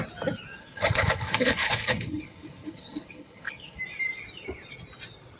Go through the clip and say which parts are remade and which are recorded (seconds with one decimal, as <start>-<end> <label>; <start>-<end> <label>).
0.0-0.6 recorded; 0.6-3.8 remade; 3.8-5.4 recorded